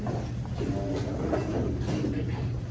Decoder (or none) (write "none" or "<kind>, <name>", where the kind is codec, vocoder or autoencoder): none